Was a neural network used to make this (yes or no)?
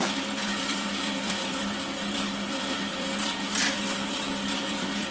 yes